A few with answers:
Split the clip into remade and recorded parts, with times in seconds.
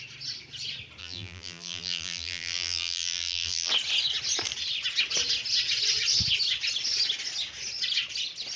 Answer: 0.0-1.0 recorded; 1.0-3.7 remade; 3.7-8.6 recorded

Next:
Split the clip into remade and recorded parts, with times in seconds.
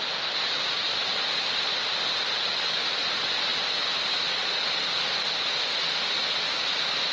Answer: 0.0-7.1 recorded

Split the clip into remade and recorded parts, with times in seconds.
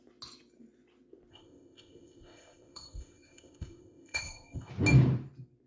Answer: 0.0-1.3 recorded; 1.3-4.7 remade; 4.7-5.7 recorded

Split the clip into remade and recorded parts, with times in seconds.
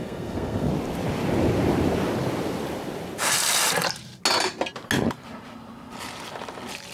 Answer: 0.0-0.7 remade; 0.7-6.9 recorded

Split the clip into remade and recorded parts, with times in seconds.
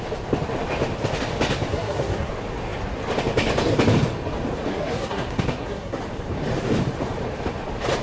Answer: 0.0-1.7 recorded; 1.7-2.3 remade; 2.3-4.7 recorded; 4.7-6.0 remade; 6.0-8.0 recorded